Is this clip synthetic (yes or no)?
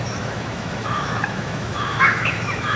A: yes